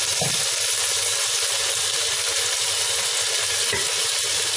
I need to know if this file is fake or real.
real